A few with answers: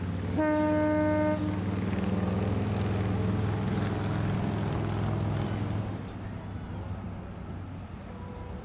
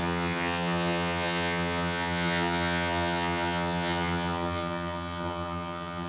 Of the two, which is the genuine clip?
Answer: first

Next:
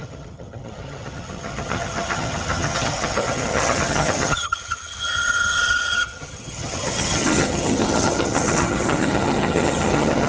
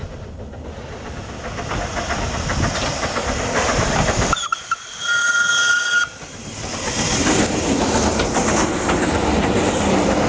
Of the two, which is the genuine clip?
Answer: second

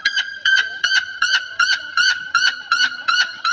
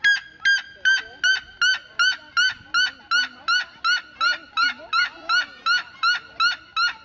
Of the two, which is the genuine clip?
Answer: second